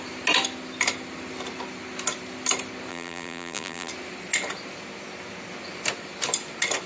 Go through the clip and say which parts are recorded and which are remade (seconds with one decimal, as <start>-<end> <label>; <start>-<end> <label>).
0.0-2.9 recorded; 2.9-3.9 remade; 3.9-6.9 recorded